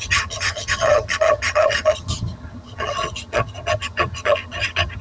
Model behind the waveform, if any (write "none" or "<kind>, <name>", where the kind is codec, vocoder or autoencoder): vocoder, HiFi-GAN